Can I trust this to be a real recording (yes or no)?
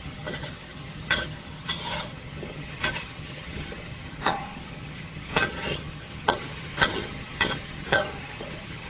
no